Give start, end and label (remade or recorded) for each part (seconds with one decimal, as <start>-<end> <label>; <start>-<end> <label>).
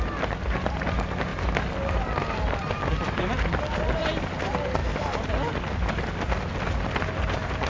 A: 0.0-7.7 recorded